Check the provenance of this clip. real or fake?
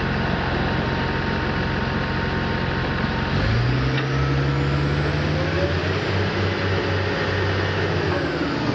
real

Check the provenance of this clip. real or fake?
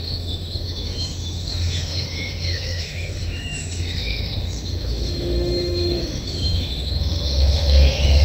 fake